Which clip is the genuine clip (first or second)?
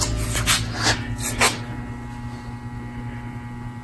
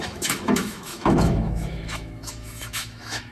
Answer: first